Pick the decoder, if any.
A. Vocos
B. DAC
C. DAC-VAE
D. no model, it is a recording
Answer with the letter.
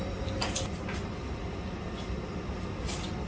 D